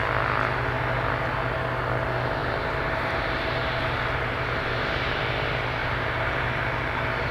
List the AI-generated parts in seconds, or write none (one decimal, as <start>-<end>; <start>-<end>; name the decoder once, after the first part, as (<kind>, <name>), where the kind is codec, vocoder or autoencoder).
2.4-5.2 (vocoder, BigVGAN v2); 5.8-6.5